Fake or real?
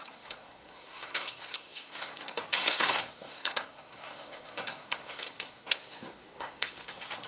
fake